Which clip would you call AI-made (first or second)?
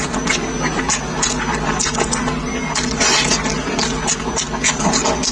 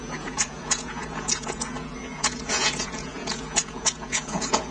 second